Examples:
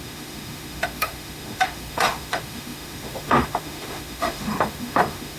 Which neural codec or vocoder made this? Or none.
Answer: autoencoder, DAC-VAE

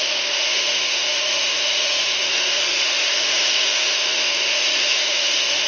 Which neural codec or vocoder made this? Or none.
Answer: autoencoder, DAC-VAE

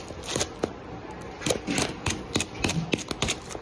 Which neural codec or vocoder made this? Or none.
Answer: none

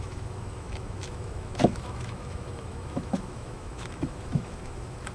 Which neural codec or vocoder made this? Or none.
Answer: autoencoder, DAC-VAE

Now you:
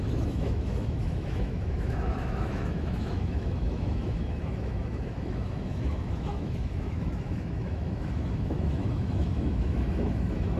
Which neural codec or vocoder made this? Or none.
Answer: autoencoder, DAC-VAE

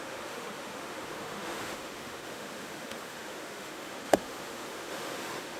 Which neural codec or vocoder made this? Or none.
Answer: autoencoder, DAC-VAE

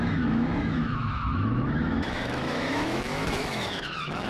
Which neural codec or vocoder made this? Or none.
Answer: autoencoder, DAC-VAE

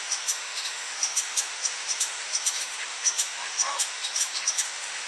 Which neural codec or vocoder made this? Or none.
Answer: autoencoder, DAC-VAE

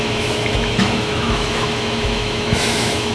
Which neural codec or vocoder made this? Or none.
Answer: autoencoder, DAC-VAE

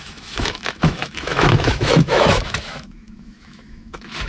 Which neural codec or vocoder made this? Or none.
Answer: autoencoder, DAC-VAE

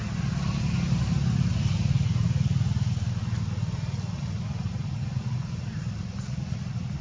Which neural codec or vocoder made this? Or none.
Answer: none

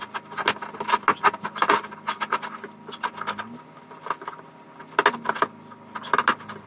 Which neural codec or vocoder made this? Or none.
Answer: none